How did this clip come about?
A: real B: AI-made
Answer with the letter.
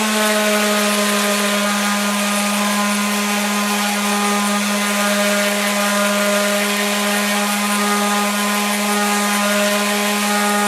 A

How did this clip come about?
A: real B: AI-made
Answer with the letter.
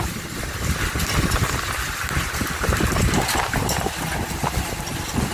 A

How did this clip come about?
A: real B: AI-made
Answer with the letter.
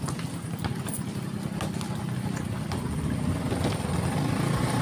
A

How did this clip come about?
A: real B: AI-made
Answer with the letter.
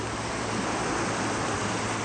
A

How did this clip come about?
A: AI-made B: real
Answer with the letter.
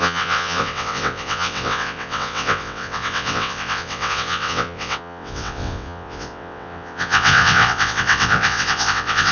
A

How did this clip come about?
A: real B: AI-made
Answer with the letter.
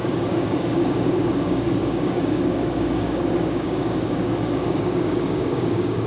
B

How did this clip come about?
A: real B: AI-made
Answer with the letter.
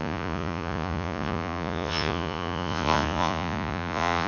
B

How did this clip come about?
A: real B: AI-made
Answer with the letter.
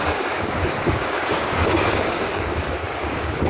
B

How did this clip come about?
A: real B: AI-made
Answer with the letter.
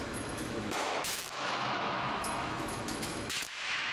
B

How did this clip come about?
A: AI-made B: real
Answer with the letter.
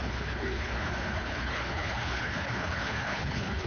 A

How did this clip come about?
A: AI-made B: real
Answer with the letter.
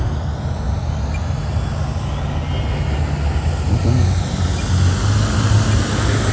B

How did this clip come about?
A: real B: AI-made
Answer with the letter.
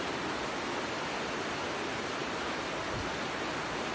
A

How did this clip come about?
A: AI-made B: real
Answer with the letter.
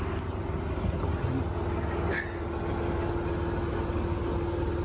B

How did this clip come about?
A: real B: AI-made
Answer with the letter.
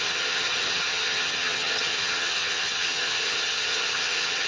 B